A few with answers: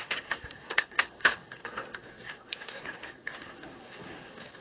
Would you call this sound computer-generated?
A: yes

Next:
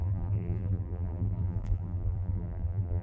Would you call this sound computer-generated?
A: yes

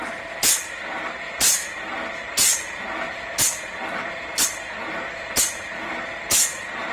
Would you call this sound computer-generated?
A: no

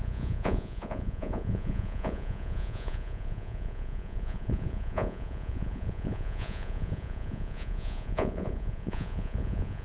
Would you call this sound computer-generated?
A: yes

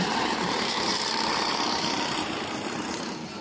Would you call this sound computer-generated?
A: no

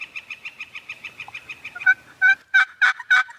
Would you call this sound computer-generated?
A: yes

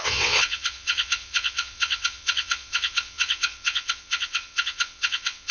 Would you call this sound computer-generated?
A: yes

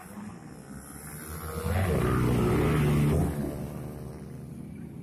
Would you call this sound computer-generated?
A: no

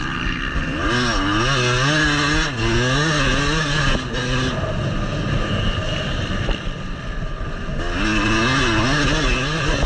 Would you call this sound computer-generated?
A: no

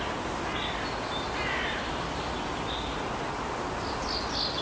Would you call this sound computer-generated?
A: no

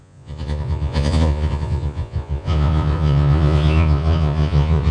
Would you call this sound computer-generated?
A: yes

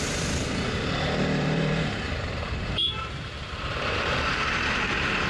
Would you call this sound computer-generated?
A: yes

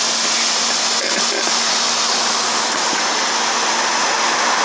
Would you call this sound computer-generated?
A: no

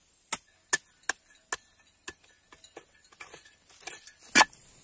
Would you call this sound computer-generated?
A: no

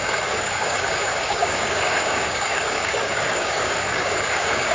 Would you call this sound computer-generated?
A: yes